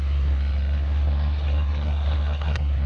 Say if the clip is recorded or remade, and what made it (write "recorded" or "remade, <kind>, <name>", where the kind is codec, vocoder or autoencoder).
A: remade, codec, SNAC